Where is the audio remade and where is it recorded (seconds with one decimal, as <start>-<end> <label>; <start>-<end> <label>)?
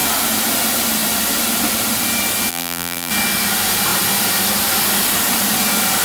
0.0-2.5 recorded; 2.5-3.1 remade; 3.1-6.0 recorded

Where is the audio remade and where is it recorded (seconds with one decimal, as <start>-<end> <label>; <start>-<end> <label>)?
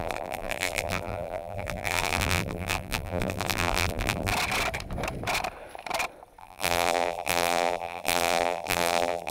0.0-4.3 remade; 4.3-6.4 recorded; 6.4-9.3 remade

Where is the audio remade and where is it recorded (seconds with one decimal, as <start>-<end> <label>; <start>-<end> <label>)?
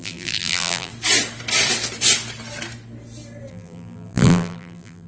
0.0-0.9 remade; 0.9-3.5 recorded; 3.5-5.1 remade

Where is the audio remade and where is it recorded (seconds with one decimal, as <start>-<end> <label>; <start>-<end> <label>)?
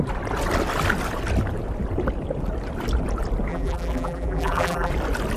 0.0-3.5 recorded; 3.5-4.9 remade; 4.9-5.4 recorded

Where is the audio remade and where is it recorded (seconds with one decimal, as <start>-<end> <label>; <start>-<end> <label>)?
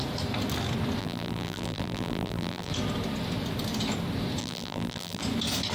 0.0-1.0 recorded; 1.0-2.7 remade; 2.7-4.4 recorded; 4.4-5.2 remade; 5.2-5.7 recorded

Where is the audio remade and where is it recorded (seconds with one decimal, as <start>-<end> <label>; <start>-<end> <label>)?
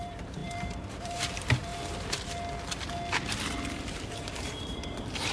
0.0-1.7 remade; 1.7-3.9 recorded; 3.9-5.3 remade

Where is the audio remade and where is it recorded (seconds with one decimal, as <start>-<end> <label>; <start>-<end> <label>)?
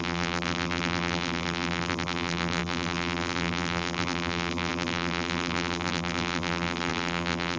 0.0-7.6 remade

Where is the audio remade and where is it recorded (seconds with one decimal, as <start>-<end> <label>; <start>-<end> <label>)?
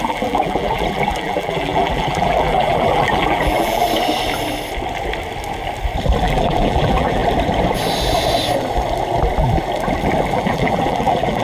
0.0-3.8 remade; 3.8-6.2 recorded; 6.2-7.2 remade; 7.2-10.3 recorded; 10.3-11.4 remade